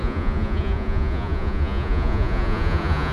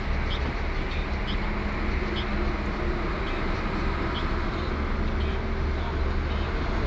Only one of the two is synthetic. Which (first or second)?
first